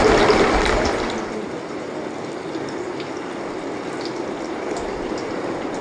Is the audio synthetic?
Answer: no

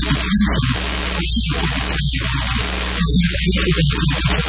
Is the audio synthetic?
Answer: no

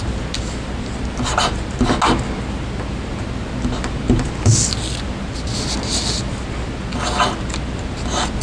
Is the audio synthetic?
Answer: no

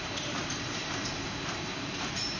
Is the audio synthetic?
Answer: yes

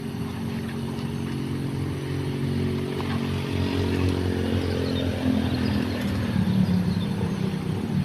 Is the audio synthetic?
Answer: no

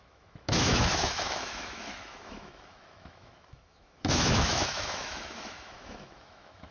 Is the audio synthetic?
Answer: yes